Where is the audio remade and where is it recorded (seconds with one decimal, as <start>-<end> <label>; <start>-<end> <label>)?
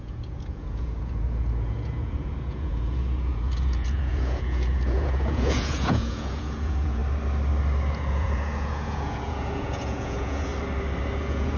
0.0-7.0 remade; 7.0-7.9 recorded; 7.9-10.5 remade; 10.5-11.2 recorded; 11.2-11.6 remade